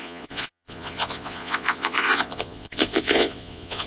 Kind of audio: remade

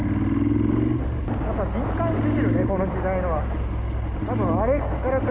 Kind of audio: recorded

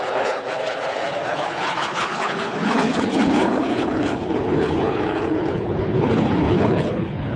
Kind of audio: remade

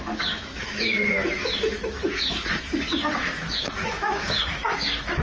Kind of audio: remade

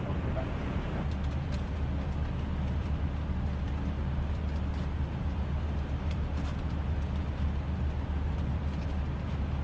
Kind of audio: recorded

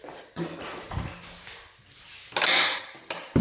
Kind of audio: recorded